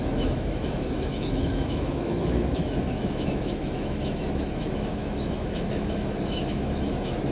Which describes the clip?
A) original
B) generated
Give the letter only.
B